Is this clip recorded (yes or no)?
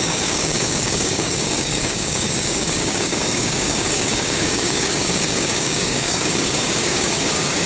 no